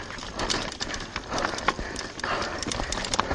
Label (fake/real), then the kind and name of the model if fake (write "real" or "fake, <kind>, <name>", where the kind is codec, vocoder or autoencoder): real